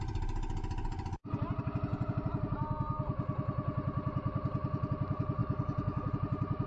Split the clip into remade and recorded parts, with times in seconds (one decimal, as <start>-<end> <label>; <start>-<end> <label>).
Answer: 0.0-5.4 recorded; 5.4-6.1 remade; 6.1-6.7 recorded